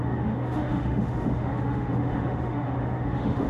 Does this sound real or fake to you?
fake